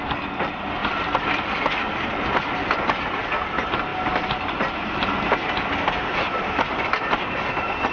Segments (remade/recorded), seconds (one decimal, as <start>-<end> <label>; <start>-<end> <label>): 0.0-7.9 recorded